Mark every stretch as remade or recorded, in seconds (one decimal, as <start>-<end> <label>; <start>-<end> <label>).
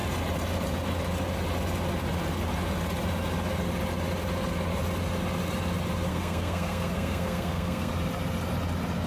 0.0-6.1 recorded; 6.1-7.9 remade; 7.9-9.1 recorded